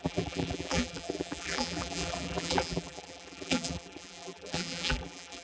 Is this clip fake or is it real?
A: fake